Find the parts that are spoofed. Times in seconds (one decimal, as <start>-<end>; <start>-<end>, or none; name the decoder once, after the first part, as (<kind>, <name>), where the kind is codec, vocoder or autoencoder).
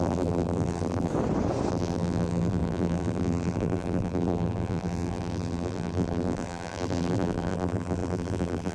0.0-1.1 (vocoder, BigVGAN v2); 1.7-8.7